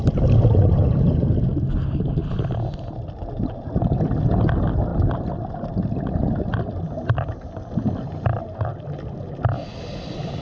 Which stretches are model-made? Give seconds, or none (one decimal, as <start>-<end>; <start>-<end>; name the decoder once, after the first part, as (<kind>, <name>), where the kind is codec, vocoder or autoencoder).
none